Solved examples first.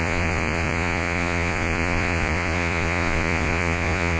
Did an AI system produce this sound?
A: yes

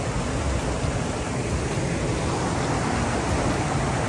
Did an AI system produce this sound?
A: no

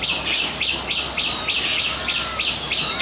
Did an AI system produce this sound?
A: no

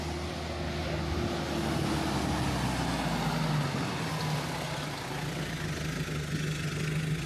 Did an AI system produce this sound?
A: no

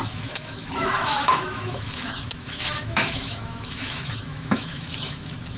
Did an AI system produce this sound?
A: yes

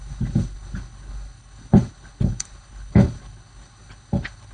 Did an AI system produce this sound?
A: yes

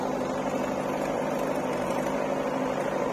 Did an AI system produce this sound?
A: no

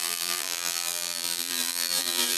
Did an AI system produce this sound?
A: yes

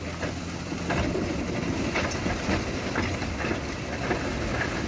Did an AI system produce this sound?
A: no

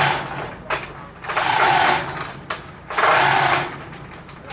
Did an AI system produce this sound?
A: no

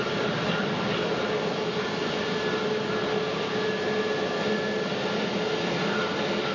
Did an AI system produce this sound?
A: no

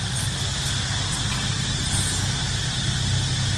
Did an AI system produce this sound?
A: no